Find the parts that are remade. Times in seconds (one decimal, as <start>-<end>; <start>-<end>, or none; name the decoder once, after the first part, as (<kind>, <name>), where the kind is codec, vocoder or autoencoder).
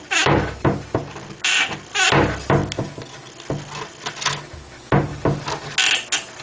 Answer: none